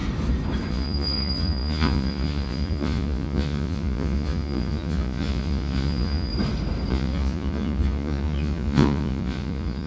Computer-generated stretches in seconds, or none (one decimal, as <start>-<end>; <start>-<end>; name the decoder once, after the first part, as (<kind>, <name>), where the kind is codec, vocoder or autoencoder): 0.7-6.3 (vocoder, Vocos); 6.9-9.9